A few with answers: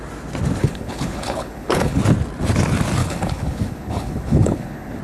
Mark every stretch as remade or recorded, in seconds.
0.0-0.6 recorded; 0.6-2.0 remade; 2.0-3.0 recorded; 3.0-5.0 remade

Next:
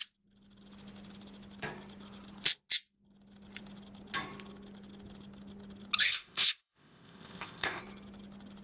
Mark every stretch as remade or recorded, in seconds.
0.0-6.0 recorded; 6.0-7.8 remade; 7.8-8.6 recorded

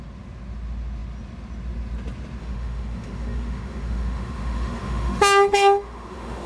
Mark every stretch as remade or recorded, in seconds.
0.0-2.4 recorded; 2.4-6.5 remade

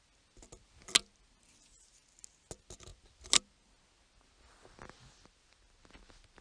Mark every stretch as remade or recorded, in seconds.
0.0-6.4 recorded

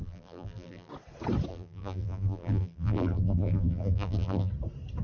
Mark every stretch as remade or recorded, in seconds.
0.0-0.9 remade; 0.9-1.5 recorded; 1.5-4.5 remade; 4.5-5.0 recorded